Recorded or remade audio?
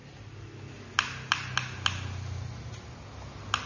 recorded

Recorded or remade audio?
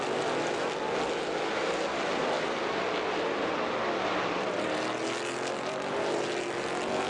recorded